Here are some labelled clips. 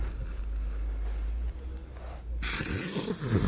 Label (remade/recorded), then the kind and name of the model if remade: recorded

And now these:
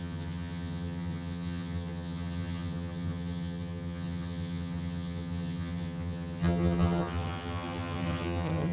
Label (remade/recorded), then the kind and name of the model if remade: remade, vocoder, HiFi-GAN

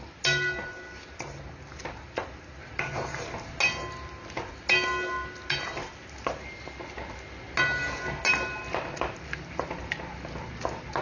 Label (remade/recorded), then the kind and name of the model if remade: recorded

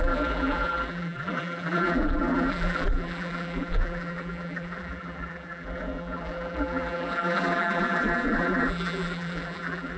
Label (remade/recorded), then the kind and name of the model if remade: remade, vocoder, BigVGAN v2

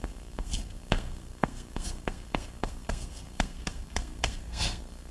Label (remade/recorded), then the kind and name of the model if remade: remade, codec, SNAC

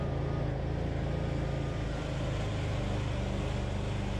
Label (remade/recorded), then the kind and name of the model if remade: recorded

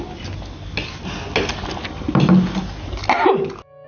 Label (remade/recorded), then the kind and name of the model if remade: recorded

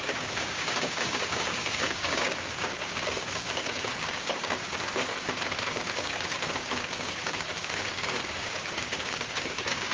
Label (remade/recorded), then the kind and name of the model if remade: remade, codec, DAC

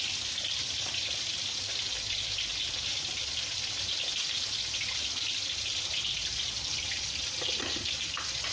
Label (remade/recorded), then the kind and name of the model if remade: recorded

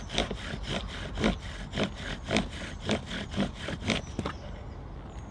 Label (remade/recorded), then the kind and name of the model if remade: recorded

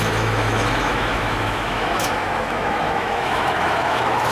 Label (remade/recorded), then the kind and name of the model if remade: remade, autoencoder, DAC-VAE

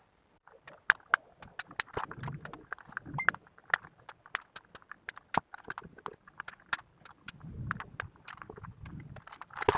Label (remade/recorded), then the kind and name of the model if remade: recorded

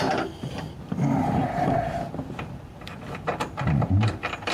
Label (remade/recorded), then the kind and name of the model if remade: remade, vocoder, BigVGAN v2